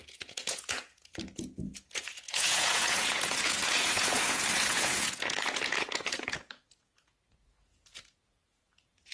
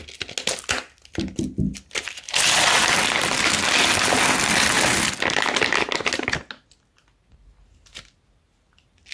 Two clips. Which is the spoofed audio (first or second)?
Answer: first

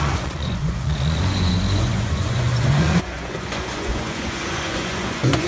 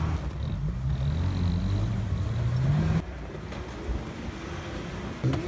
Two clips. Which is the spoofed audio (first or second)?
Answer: first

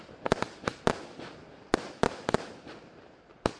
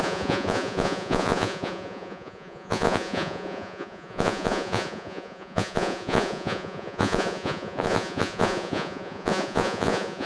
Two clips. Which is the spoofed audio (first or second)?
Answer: second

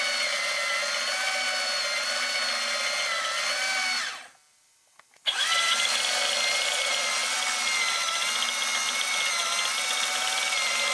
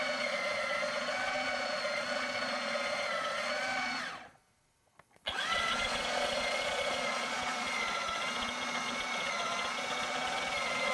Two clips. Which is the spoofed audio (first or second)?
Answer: second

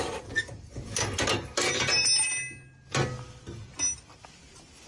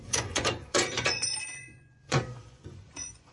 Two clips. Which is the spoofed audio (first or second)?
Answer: second